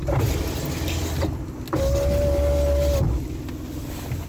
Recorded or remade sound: recorded